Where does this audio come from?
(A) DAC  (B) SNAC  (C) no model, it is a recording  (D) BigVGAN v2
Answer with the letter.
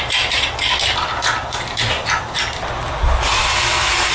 C